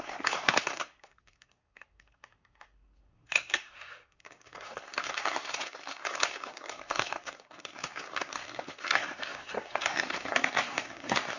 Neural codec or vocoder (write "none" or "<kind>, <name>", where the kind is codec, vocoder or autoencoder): codec, SNAC